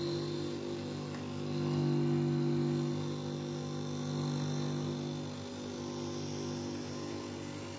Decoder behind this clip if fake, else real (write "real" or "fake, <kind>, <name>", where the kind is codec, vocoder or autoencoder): real